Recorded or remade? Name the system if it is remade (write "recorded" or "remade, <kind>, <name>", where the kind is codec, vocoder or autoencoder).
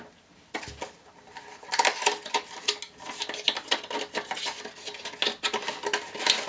recorded